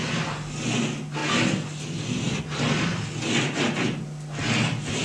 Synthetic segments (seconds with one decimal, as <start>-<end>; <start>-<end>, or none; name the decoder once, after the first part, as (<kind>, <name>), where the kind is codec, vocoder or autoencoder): none